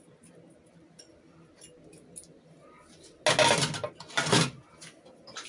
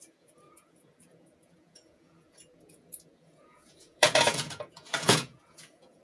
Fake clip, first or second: second